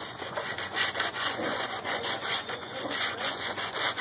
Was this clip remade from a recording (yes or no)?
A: yes